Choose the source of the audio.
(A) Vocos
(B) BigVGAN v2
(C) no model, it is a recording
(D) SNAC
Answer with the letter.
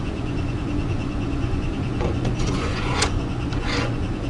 A